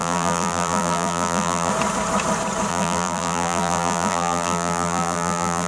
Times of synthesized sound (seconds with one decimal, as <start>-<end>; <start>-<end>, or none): 0.0-1.7; 2.7-5.7